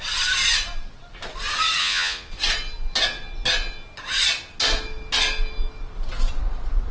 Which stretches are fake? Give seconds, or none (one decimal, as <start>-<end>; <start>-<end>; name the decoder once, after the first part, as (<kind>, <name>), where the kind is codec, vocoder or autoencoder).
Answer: 1.8-2.3 (vocoder, Vocos)